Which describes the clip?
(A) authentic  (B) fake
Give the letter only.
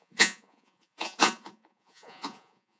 B